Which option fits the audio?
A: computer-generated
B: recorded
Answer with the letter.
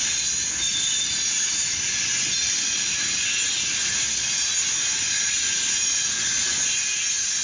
B